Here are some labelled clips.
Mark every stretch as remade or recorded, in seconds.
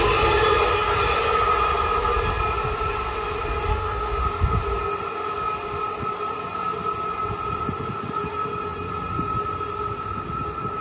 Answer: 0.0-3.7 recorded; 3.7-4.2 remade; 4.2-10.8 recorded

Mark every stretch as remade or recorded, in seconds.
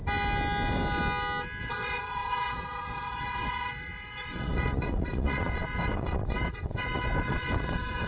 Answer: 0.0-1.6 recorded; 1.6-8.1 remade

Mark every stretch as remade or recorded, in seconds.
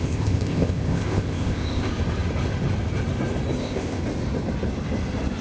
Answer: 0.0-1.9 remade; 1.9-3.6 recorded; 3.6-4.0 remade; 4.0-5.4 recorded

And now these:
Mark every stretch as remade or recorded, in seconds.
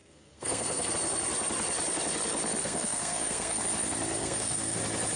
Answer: 0.0-0.9 remade; 0.9-2.6 recorded; 2.6-3.6 remade; 3.6-4.2 recorded; 4.2-4.8 remade; 4.8-5.2 recorded